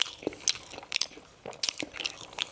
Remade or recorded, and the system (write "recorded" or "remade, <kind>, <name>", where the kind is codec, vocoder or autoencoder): recorded